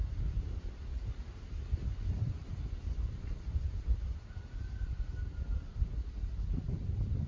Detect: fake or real real